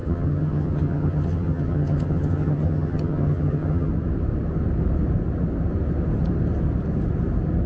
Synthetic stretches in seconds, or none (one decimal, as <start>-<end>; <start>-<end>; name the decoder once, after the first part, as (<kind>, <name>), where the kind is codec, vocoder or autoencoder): 0.0-3.9 (vocoder, HiFi-GAN)